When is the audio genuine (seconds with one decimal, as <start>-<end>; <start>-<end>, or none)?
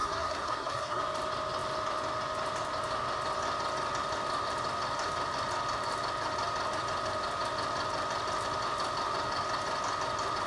1.0-10.5